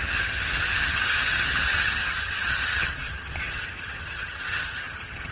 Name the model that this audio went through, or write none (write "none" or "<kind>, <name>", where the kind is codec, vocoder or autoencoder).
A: vocoder, HiFi-GAN